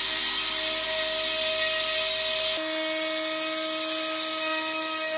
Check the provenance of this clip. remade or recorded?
recorded